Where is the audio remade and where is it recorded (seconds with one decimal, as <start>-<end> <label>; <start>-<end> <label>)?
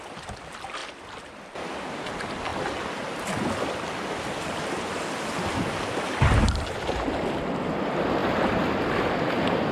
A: 0.0-9.7 recorded